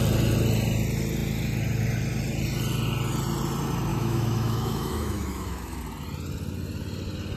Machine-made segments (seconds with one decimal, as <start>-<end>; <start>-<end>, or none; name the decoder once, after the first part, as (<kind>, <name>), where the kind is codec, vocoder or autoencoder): 3.9-5.8 (autoencoder, DAC-VAE)

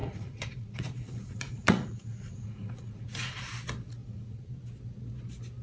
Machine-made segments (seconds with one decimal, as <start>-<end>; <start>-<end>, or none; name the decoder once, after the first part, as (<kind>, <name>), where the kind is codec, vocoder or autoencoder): 0.0-3.4 (vocoder, Vocos); 4.0-4.6

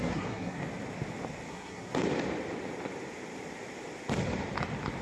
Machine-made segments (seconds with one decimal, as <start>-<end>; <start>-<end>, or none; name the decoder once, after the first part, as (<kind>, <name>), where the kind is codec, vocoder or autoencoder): 0.0-0.6 (codec, SNAC); 1.5-1.9

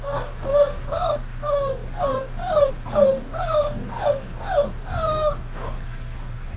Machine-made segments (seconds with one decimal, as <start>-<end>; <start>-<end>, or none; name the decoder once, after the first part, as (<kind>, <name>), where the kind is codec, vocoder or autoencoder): 0.0-6.6 (codec, DAC)

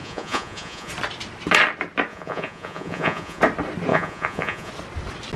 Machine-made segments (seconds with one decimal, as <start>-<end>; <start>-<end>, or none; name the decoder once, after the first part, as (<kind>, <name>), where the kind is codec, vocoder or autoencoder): 0.0-0.9 (vocoder, Vocos); 2.1-3.4; 3.9-4.7

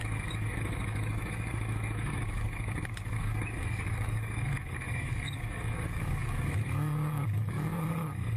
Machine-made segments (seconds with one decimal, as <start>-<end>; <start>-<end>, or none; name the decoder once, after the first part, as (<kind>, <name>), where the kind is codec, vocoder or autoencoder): 0.0-8.4 (codec, DAC)